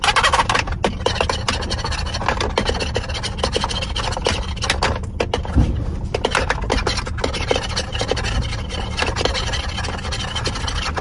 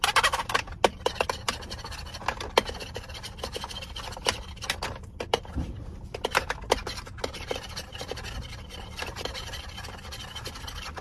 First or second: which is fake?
second